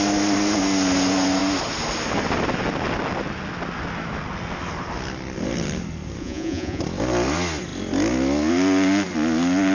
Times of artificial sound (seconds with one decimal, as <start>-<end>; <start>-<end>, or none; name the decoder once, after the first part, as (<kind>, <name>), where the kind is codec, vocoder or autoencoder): 6.2-6.8 (vocoder, Vocos)